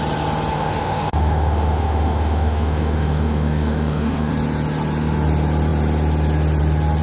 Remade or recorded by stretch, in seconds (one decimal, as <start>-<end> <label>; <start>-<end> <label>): 0.0-0.5 recorded; 0.5-4.3 remade; 4.3-7.0 recorded